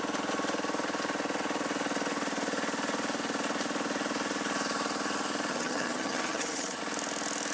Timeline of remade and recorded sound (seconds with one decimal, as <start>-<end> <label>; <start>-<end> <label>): 0.0-5.5 recorded; 5.5-6.8 remade; 6.8-7.5 recorded